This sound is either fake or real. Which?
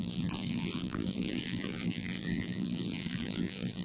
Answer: fake